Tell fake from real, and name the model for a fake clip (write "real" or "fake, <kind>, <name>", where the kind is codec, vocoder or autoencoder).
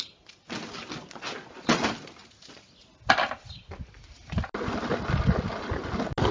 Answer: real